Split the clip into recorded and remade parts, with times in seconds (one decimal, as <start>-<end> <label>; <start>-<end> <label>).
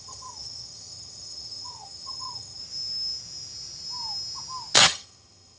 0.0-2.6 remade; 2.6-4.8 recorded; 4.8-5.6 remade